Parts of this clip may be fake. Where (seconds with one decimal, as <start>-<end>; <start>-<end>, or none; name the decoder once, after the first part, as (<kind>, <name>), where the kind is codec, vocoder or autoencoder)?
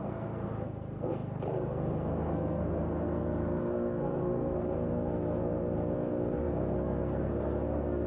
0.0-8.1 (codec, SNAC)